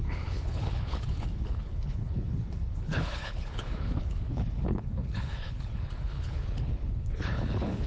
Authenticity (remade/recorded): remade